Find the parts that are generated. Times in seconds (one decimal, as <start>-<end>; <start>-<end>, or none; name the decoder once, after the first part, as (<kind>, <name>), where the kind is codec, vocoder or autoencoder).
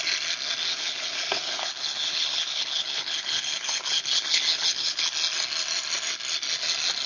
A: 0.7-5.0 (codec, HILCodec)